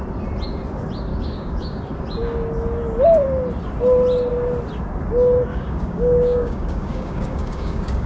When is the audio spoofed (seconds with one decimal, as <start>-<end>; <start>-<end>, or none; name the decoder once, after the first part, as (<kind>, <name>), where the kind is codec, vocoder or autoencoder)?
1.1-1.8 (codec, DAC); 5.5-8.1